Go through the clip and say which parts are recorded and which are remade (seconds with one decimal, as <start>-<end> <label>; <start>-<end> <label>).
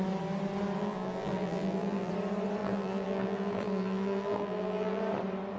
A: 0.0-0.8 recorded; 0.8-2.1 remade; 2.1-2.6 recorded; 2.6-5.0 remade; 5.0-5.6 recorded